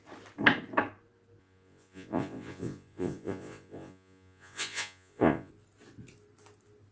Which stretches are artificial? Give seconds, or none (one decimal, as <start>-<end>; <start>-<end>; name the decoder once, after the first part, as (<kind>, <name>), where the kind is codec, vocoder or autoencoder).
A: 1.4-5.5 (vocoder, Vocos)